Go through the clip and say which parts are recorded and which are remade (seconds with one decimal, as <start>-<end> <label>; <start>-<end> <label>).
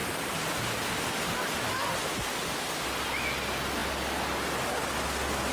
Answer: 0.0-5.5 recorded